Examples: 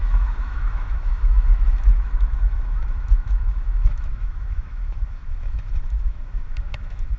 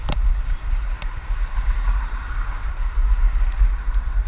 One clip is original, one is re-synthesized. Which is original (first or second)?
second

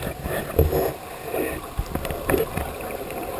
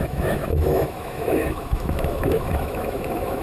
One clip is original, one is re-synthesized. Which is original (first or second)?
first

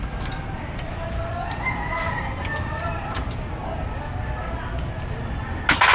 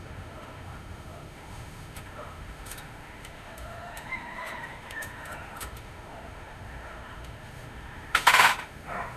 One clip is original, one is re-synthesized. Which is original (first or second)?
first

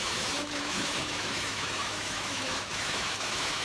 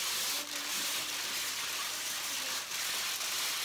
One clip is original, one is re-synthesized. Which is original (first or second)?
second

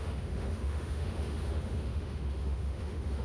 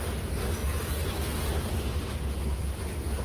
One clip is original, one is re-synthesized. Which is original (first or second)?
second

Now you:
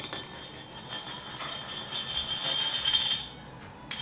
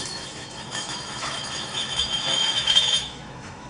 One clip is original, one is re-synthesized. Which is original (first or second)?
first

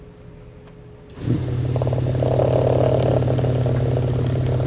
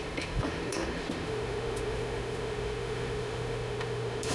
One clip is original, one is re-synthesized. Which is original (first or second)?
first